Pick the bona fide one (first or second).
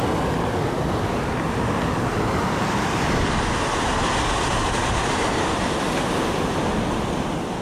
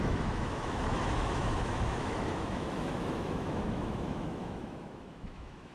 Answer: first